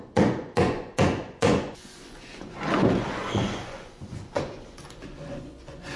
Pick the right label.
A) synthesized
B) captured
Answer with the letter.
A